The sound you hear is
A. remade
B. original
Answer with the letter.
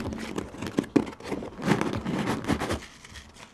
B